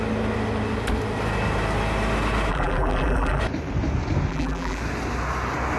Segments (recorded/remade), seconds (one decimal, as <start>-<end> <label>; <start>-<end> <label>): 0.0-2.5 recorded; 2.5-3.4 remade; 3.4-4.3 recorded; 4.3-4.8 remade; 4.8-5.8 recorded